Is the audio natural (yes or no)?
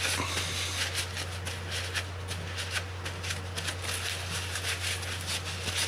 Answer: yes